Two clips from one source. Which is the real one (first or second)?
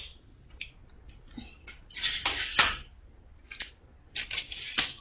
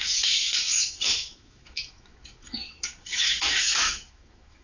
first